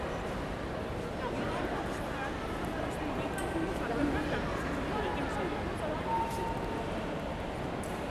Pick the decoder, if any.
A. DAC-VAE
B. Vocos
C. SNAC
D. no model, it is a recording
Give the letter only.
D